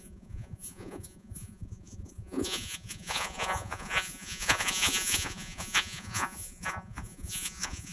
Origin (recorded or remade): remade